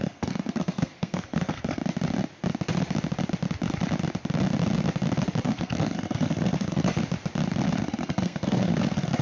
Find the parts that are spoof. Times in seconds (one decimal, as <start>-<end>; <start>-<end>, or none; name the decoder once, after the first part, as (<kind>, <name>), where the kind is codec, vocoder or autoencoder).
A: 0.0-1.8 (codec, SNAC); 5.4-7.0; 7.8-9.2